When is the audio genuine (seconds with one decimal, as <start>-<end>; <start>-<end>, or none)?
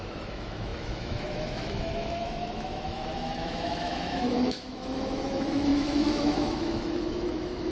none